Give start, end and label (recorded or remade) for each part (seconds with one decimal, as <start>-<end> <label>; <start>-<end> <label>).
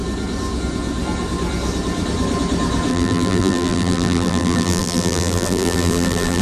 0.0-2.9 recorded; 2.9-6.4 remade